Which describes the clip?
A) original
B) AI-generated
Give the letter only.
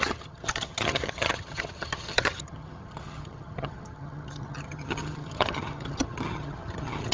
B